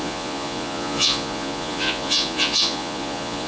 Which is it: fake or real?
fake